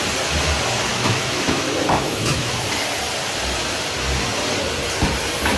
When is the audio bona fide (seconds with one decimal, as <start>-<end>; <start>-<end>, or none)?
0.0-0.9; 2.5-5.6